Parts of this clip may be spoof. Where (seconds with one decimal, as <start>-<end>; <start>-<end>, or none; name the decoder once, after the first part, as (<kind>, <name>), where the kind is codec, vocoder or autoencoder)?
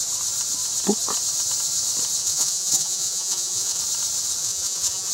2.2-3.8 (vocoder, Vocos); 4.4-5.1